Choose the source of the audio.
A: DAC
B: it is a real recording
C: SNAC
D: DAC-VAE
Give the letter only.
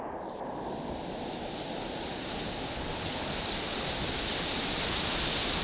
B